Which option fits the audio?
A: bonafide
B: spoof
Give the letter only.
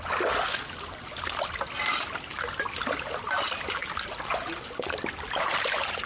A